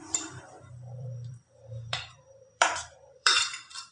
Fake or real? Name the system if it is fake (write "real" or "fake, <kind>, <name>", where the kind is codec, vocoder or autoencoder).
fake, vocoder, BigVGAN v2